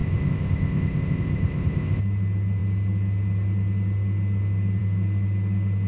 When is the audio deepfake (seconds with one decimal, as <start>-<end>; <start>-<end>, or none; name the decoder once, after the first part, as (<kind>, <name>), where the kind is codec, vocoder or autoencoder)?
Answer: 0.0-2.0 (codec, ZipCodec)